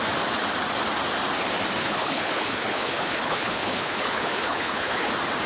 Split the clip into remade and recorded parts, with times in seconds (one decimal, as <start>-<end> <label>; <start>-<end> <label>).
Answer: 0.0-1.8 recorded; 1.8-5.1 remade; 5.1-5.5 recorded